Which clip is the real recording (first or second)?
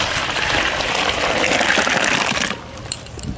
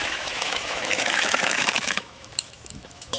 first